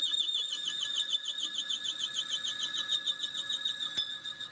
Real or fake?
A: real